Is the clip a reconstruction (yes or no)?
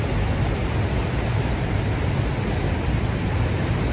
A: no